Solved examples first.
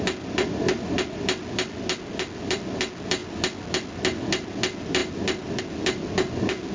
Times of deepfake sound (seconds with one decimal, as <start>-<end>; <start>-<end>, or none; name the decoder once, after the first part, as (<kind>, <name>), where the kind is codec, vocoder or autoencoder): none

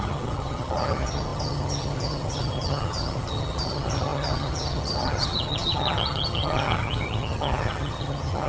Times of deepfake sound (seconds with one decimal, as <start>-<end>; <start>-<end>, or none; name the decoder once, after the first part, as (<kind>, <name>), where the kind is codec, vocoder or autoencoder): 0.0-8.5 (vocoder, HiFi-GAN)

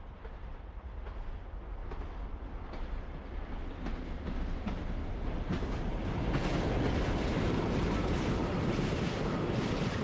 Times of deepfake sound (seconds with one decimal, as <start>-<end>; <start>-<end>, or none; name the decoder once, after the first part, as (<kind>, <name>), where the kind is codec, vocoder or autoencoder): 0.0-1.8 (vocoder, BigVGAN v2); 3.2-5.0; 6.6-8.4; 9.5-10.0

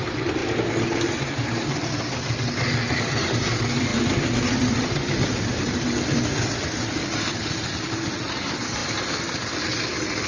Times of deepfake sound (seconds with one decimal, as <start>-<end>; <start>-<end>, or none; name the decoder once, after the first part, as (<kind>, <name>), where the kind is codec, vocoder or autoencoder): 0.0-0.4 (vocoder, BigVGAN v2); 3.0-8.8